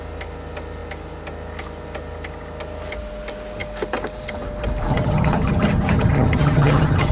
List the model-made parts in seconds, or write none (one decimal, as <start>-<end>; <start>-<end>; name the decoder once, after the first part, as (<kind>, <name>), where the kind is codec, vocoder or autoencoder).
4.9-7.1 (vocoder, HiFi-GAN)